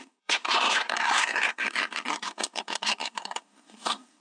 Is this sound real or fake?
fake